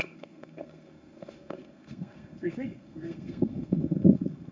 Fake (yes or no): yes